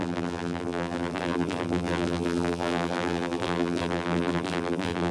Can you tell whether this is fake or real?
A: fake